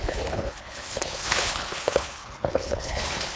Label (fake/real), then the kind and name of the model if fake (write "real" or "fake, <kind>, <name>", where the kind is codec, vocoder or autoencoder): fake, codec, HILCodec